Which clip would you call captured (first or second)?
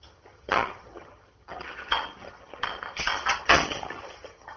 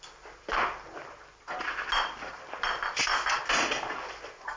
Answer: second